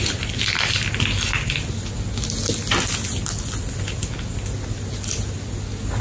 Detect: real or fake real